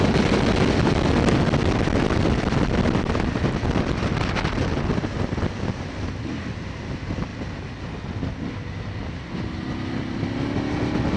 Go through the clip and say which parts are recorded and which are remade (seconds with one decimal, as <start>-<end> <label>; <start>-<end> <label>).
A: 0.0-11.2 recorded